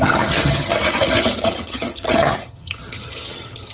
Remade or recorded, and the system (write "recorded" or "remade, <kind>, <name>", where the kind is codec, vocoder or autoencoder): remade, vocoder, HiFi-GAN